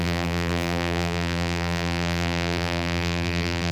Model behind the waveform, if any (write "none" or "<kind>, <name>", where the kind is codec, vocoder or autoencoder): vocoder, BigVGAN v2